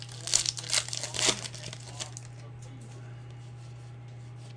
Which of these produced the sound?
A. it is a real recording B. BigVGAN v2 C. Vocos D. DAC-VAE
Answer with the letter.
A